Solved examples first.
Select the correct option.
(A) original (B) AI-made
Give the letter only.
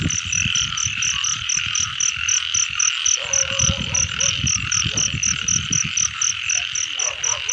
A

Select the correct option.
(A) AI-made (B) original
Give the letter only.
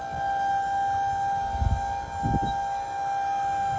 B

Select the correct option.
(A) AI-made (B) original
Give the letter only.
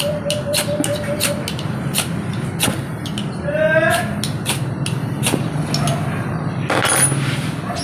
B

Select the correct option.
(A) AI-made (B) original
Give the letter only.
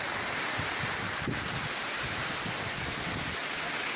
B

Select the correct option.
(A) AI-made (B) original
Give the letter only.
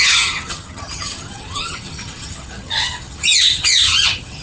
A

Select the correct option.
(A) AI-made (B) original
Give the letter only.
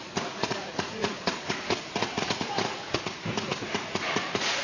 A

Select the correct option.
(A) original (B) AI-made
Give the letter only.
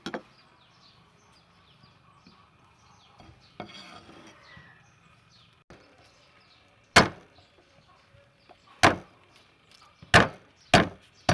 A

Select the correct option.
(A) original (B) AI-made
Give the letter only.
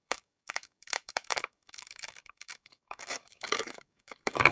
B